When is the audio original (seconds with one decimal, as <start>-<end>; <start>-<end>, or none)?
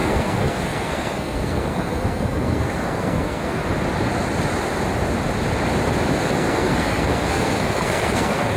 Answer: 3.6-6.2